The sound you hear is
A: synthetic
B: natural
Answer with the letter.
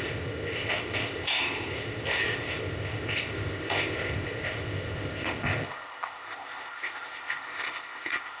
A